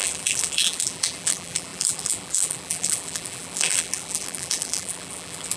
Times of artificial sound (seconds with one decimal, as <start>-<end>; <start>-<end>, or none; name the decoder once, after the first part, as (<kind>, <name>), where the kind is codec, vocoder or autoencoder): 0.0-5.6 (vocoder, BigVGAN v2)